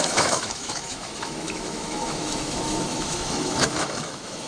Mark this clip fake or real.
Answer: fake